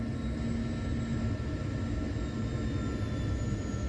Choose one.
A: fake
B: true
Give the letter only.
B